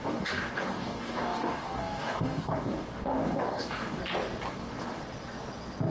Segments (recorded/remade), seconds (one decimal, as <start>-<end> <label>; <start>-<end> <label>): 0.0-4.0 remade; 4.0-4.5 recorded; 4.5-5.0 remade; 5.0-5.9 recorded